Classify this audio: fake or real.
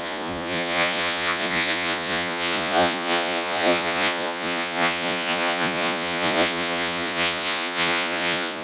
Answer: fake